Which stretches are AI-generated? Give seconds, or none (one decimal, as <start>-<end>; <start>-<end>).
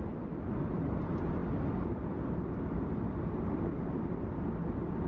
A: none